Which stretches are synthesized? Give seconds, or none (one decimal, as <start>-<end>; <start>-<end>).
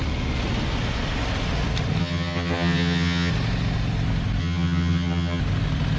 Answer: 2.0-3.3; 4.4-5.4